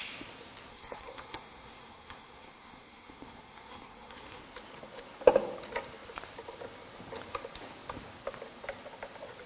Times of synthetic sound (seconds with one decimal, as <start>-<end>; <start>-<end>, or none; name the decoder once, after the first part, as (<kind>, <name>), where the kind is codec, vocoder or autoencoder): 0.7-4.4 (codec, SNAC)